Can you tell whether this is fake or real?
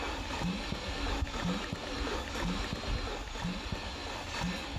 real